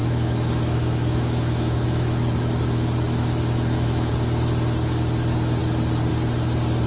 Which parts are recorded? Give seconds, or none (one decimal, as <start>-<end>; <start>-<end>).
4.1-6.9